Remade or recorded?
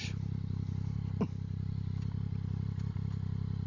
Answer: recorded